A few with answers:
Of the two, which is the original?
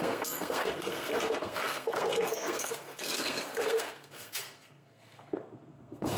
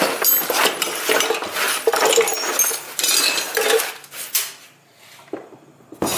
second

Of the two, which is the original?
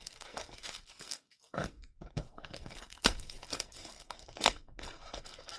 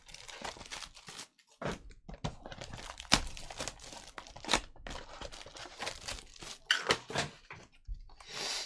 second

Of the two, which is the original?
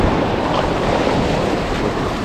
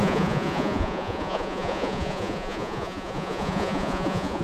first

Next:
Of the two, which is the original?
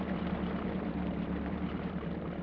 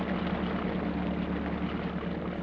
second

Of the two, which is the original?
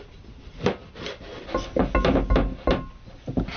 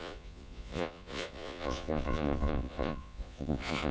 first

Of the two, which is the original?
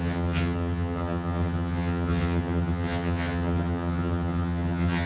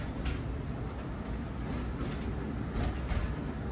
second